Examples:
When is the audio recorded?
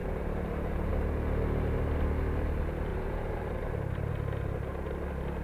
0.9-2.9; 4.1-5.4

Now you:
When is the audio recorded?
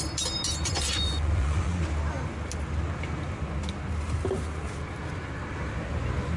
0.0-0.6; 1.8-6.4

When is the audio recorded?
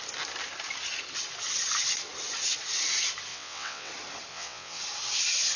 0.0-3.3; 3.9-4.3; 4.8-5.6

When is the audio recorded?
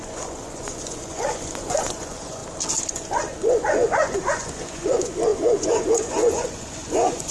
2.4-2.9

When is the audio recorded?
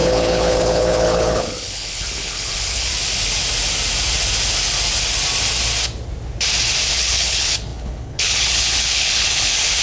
2.9-6.9